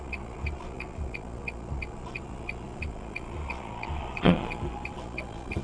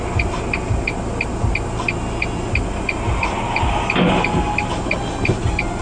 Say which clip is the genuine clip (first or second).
second